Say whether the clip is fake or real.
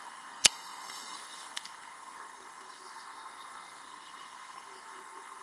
fake